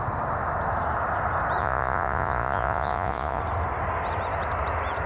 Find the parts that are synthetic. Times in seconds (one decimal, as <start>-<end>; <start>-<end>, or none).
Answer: 1.6-3.4